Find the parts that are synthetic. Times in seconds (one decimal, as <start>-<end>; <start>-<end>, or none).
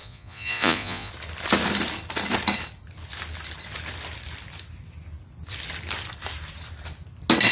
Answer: 0.0-1.1